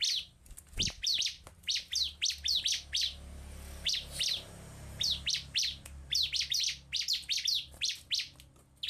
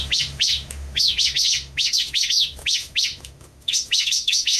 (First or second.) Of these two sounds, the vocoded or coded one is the second